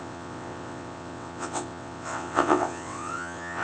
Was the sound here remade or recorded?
remade